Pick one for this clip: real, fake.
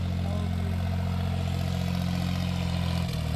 real